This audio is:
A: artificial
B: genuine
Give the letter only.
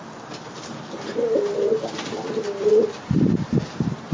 A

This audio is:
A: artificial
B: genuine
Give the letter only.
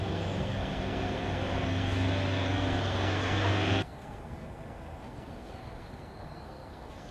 A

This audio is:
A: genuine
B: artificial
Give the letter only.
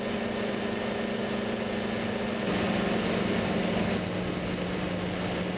A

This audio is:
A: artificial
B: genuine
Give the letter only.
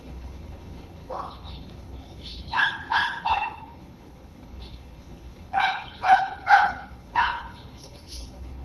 A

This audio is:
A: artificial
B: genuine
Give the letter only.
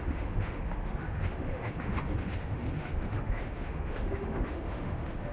A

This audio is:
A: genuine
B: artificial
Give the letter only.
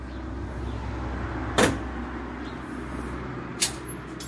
A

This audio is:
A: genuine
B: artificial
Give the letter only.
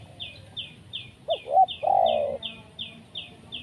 A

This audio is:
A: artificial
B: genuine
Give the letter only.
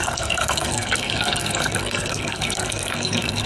A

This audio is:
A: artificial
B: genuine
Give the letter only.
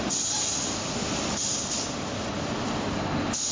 B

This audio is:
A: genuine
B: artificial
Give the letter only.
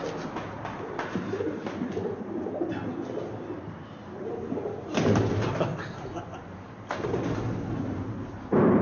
A